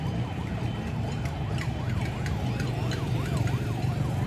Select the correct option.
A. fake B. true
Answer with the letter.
B